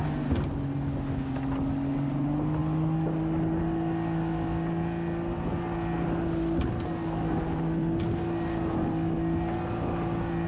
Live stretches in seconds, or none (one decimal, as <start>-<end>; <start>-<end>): 0.0-10.5